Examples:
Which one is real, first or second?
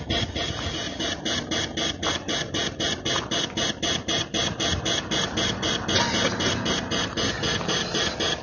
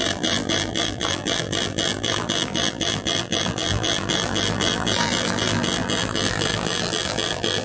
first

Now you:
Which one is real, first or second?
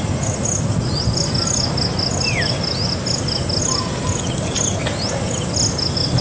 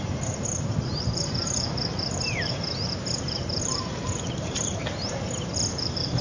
first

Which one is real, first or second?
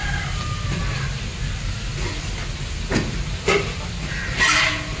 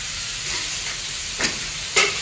first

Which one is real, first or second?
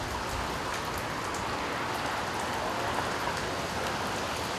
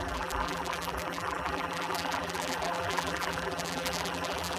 first